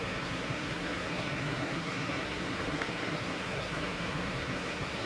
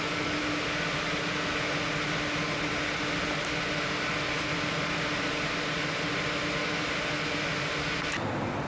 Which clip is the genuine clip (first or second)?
second